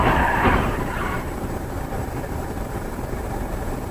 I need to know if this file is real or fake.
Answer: fake